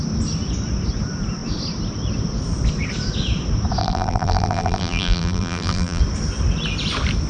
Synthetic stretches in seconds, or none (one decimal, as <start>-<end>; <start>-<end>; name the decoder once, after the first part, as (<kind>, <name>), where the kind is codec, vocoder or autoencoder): 3.8-6.0 (vocoder, BigVGAN v2)